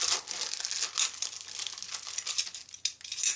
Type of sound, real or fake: real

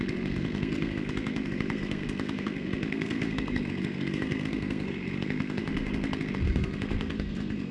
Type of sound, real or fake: fake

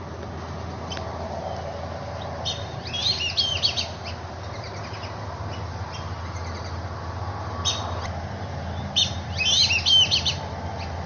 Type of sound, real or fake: real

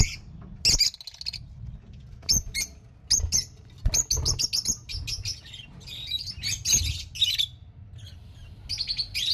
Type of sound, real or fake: real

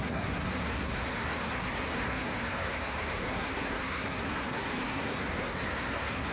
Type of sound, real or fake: fake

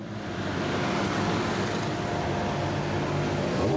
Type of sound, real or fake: real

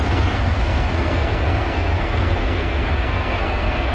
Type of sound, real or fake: fake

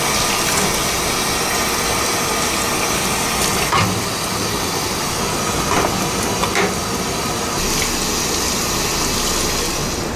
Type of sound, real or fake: real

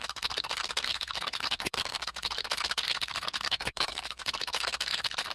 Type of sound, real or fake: fake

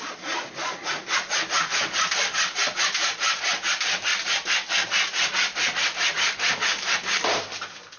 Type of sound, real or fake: real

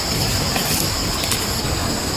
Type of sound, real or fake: real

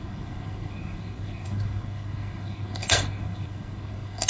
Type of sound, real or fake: fake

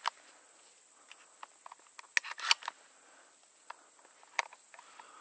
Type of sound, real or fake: real